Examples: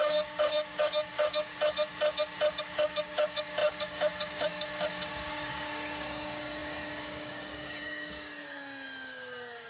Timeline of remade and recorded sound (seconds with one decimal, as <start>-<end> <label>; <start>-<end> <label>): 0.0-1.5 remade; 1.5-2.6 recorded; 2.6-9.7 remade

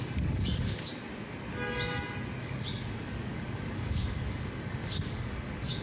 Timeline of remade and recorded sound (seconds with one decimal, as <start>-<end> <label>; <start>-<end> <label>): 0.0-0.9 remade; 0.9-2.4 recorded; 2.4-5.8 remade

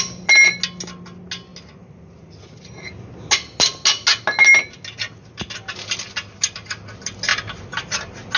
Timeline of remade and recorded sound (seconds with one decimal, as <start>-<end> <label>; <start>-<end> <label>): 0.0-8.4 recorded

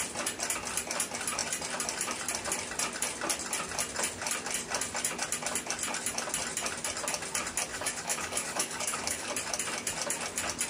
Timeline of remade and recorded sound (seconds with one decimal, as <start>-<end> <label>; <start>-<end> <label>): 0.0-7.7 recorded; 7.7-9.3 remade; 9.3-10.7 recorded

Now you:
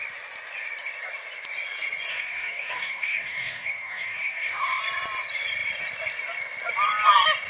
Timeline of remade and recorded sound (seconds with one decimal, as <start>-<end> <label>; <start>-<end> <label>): 0.0-2.1 recorded; 2.1-4.8 remade; 4.8-7.5 recorded

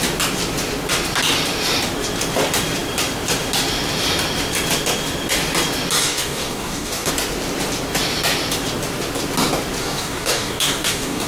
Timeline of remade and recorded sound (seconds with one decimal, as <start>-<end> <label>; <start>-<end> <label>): 0.0-6.0 recorded; 6.0-7.1 remade; 7.1-9.8 recorded; 9.8-11.3 remade